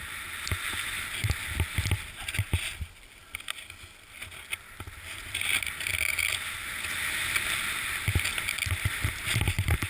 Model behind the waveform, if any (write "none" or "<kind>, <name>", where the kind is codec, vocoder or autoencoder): none